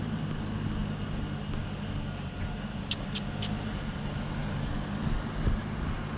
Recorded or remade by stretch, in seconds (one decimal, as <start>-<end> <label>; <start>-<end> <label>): 0.0-6.2 recorded